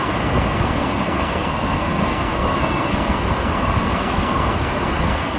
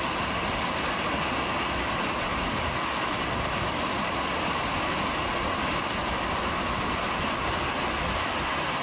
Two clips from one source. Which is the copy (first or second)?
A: first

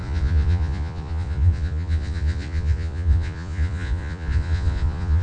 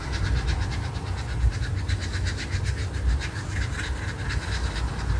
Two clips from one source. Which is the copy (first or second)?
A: first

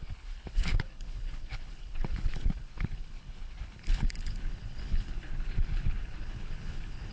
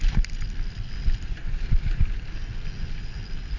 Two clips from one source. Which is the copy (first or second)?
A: first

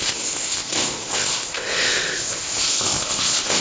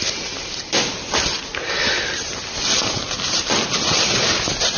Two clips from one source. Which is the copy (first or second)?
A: first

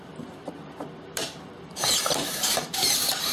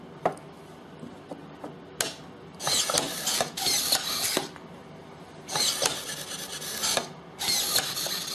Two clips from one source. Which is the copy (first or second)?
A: first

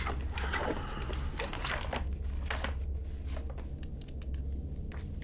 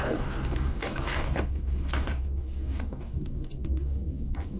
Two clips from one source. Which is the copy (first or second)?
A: second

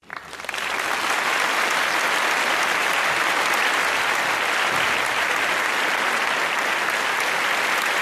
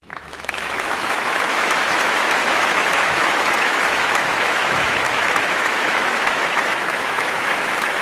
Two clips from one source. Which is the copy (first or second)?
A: second